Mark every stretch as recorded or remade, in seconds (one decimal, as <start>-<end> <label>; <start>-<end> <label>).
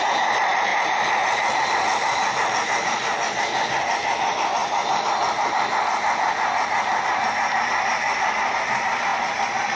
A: 0.0-9.8 recorded